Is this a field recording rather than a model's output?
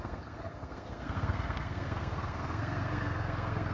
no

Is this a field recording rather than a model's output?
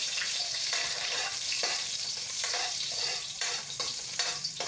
no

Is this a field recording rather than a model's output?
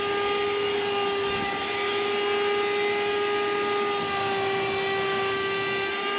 yes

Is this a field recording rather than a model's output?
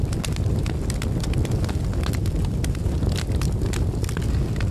yes